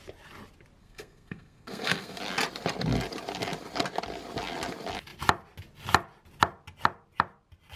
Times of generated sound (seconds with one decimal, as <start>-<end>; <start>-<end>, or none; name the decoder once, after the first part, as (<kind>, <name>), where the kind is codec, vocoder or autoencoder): 0.8-2.2 (codec, SNAC)